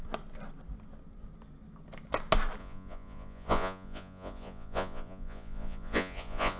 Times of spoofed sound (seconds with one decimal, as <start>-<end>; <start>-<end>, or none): 2.6-6.6